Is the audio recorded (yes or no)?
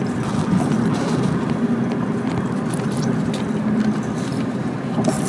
yes